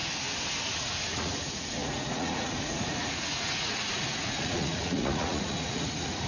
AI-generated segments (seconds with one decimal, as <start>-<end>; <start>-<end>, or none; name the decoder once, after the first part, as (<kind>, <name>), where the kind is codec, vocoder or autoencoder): 0.6-6.3 (vocoder, Vocos)